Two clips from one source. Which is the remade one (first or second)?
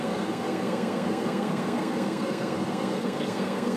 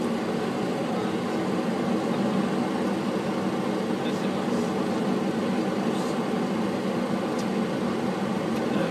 first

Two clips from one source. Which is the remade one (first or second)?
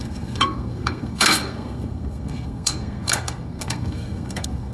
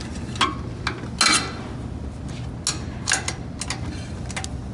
first